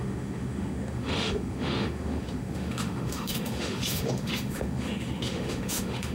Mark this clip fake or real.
fake